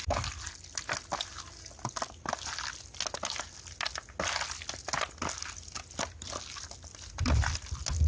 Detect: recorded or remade recorded